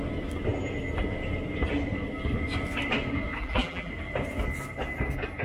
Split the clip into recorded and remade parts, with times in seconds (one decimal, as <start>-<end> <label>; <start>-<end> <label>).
0.0-3.4 recorded; 3.4-3.9 remade; 3.9-5.4 recorded